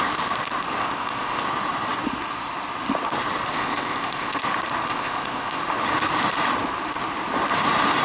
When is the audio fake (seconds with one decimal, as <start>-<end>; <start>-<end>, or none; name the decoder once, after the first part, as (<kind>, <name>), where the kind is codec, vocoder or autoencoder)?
0.8-1.4 (codec, ZipCodec); 3.5-4.4; 4.9-5.6